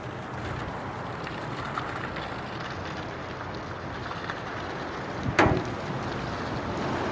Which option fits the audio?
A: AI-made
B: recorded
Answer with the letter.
B